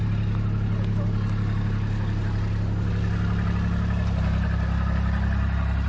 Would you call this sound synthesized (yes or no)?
no